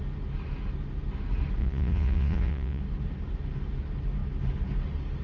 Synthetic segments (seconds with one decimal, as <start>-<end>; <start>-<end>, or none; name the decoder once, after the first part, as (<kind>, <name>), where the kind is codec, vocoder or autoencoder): 1.6-2.8 (vocoder, Vocos)